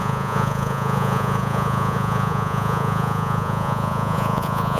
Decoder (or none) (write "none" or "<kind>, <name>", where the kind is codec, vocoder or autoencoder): vocoder, Vocos